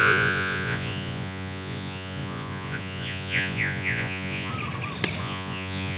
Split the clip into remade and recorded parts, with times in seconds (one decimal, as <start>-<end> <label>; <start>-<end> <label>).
0.0-4.5 remade; 4.5-5.2 recorded; 5.2-6.0 remade